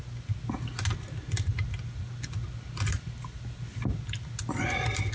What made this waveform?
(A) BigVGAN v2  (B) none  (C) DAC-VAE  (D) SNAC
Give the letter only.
B